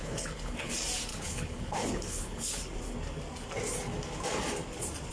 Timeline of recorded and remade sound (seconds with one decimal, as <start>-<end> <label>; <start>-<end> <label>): 0.0-0.7 remade; 0.7-1.1 recorded; 1.1-2.6 remade; 2.6-5.1 recorded